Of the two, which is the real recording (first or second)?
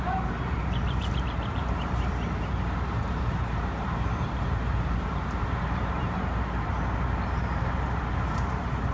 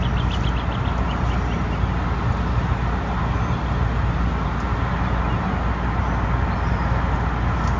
second